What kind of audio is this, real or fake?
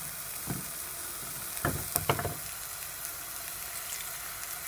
real